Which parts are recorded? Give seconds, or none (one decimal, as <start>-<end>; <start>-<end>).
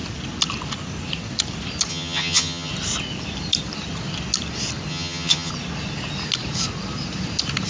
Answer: 0.0-1.9; 2.7-4.9; 5.5-7.7